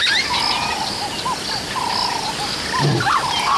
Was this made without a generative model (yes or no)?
yes